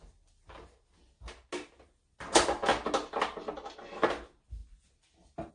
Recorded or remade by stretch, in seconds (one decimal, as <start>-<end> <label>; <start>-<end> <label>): 0.0-5.5 recorded